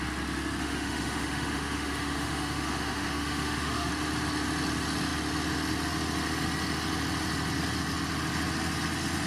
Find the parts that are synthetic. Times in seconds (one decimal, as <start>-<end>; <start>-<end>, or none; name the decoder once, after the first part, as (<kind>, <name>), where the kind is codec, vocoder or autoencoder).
0.6-3.9 (autoencoder, DAC-VAE)